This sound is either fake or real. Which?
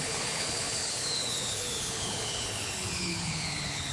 fake